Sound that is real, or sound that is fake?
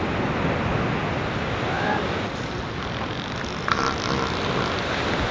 real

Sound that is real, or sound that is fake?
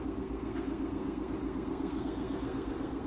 fake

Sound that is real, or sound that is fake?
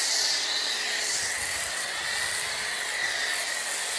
real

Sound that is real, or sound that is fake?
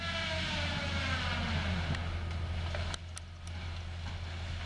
real